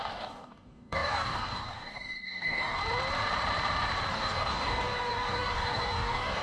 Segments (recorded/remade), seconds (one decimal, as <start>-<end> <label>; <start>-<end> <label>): 0.0-2.8 remade; 2.8-4.1 recorded; 4.1-6.4 remade

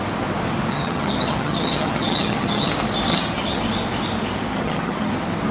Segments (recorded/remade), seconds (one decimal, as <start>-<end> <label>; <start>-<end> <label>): 0.0-0.7 recorded; 0.7-2.7 remade; 2.7-3.1 recorded; 3.1-3.6 remade; 3.6-4.5 recorded; 4.5-5.1 remade; 5.1-5.5 recorded

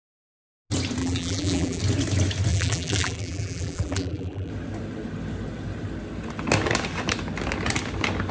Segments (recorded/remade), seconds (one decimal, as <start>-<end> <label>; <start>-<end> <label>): 0.0-1.0 recorded; 1.0-1.8 remade; 1.8-2.5 recorded; 2.5-4.5 remade; 4.5-8.3 recorded